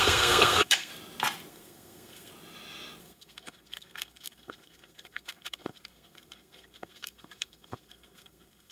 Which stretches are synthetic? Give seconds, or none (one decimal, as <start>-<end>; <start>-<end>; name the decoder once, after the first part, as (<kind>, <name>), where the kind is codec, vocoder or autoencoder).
0.0-0.9 (codec, SNAC); 1.5-2.3; 3.0-8.7